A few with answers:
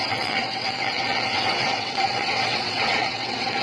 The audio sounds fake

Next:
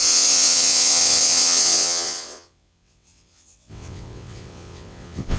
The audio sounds fake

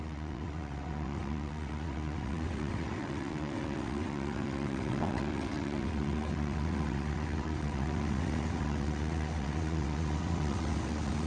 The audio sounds fake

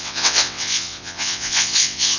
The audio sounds fake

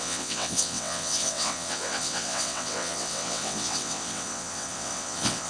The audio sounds fake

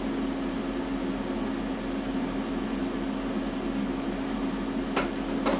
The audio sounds real